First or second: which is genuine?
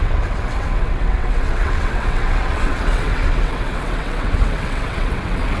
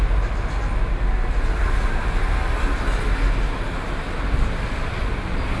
second